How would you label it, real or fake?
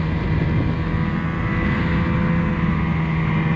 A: real